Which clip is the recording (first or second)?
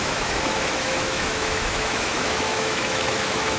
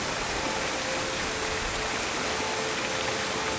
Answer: second